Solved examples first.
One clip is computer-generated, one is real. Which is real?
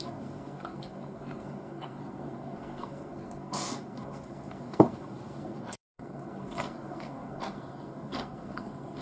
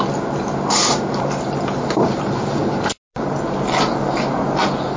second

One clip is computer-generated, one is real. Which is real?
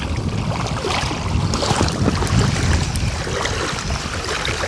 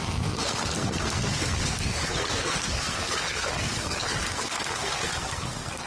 first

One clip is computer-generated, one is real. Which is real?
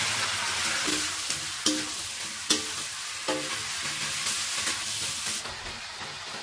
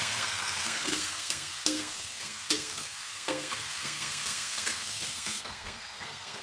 first